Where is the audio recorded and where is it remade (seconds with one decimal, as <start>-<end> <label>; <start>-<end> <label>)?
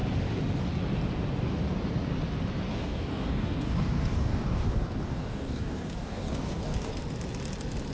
0.0-2.7 recorded; 2.7-6.9 remade; 6.9-7.9 recorded